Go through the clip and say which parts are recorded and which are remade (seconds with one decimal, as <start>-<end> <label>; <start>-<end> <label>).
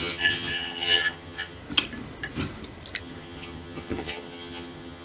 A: 0.0-1.6 remade; 1.6-3.0 recorded; 3.0-5.0 remade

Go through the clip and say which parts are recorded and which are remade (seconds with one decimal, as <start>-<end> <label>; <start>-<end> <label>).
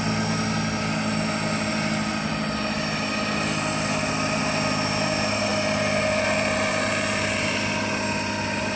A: 0.0-8.8 recorded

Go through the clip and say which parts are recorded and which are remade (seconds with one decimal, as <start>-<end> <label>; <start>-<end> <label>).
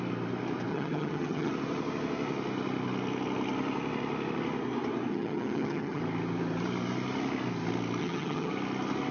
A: 0.0-0.7 recorded; 0.7-1.5 remade; 1.5-5.1 recorded; 5.1-6.0 remade; 6.0-8.0 recorded; 8.0-8.5 remade; 8.5-9.1 recorded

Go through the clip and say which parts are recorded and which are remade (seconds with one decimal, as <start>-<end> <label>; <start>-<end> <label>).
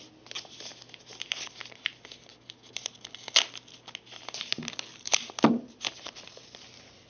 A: 0.0-7.1 recorded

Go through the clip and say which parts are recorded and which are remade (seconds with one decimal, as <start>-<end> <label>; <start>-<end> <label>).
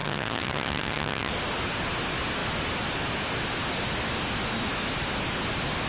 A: 0.0-1.3 remade; 1.3-5.9 recorded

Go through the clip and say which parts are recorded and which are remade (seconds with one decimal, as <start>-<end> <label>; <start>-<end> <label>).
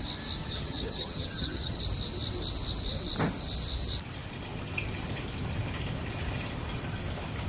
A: 0.0-0.4 recorded; 0.4-1.8 remade; 1.8-7.5 recorded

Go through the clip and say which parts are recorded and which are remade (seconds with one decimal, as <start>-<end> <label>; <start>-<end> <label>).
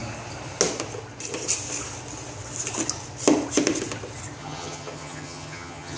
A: 0.0-4.4 recorded; 4.4-6.0 remade